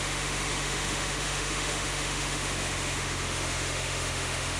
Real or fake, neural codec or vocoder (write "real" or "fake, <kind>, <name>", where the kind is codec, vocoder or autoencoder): fake, autoencoder, DAC-VAE